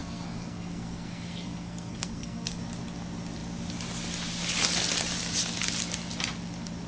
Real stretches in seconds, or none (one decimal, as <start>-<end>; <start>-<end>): 2.6-6.9